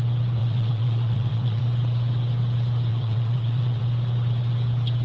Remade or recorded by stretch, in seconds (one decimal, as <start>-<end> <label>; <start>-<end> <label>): 0.0-0.4 recorded; 0.4-1.6 remade; 1.6-2.9 recorded; 2.9-3.8 remade; 3.8-5.0 recorded

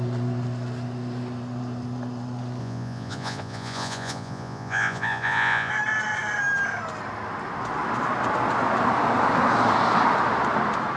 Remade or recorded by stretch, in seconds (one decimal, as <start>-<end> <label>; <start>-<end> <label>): 0.0-2.6 recorded; 2.6-5.7 remade; 5.7-11.0 recorded

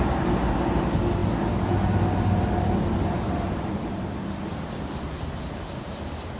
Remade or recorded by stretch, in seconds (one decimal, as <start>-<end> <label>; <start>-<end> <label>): 0.0-6.4 recorded